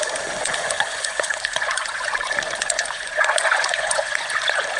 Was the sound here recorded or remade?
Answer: remade